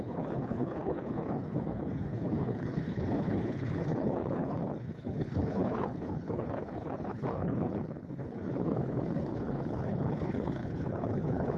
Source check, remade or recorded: remade